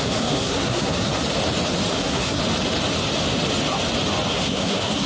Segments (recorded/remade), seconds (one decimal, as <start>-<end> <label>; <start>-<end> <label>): 0.0-1.1 remade; 1.1-1.9 recorded; 1.9-2.4 remade; 2.4-4.3 recorded; 4.3-5.1 remade